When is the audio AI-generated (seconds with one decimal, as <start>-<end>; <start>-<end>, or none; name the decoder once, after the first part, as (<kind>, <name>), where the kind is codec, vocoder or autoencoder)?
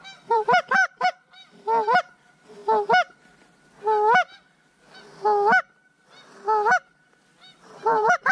0.0-2.6 (vocoder, BigVGAN v2); 7.6-8.3